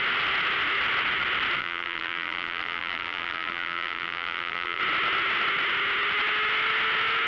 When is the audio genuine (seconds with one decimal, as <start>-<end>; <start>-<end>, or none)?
0.0-1.6; 4.8-7.3